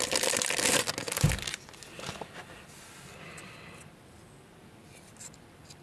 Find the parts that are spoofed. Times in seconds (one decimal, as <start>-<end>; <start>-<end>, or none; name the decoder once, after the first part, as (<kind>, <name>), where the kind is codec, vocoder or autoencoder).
none